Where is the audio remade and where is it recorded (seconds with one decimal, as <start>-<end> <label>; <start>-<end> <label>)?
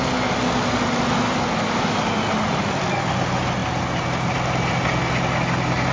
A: 0.0-5.9 recorded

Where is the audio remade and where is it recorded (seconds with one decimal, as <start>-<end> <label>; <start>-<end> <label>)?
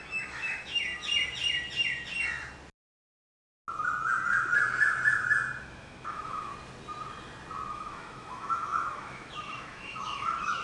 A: 0.0-0.9 remade; 0.9-5.6 recorded; 5.6-6.5 remade; 6.5-7.7 recorded; 7.7-10.6 remade